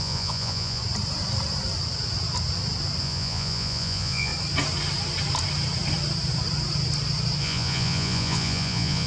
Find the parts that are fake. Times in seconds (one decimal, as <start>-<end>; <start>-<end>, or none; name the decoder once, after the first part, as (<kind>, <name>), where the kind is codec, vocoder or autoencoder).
0.0-0.8 (vocoder, Vocos); 3.0-4.3; 7.4-9.1